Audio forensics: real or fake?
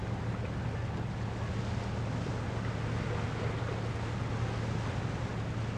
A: real